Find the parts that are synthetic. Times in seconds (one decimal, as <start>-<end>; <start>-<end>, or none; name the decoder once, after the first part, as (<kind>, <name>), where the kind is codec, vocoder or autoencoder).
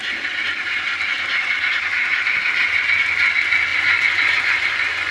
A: 3.7-5.1 (vocoder, Vocos)